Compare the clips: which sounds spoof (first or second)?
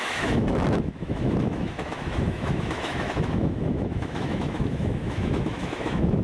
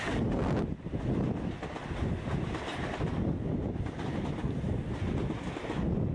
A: first